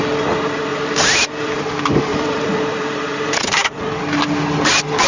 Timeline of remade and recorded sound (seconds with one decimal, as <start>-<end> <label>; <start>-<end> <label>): 0.0-0.7 recorded; 0.7-3.8 remade; 3.8-5.1 recorded